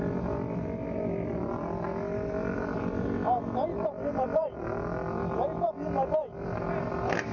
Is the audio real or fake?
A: real